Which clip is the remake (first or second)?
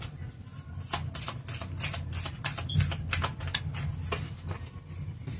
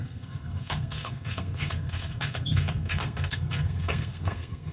second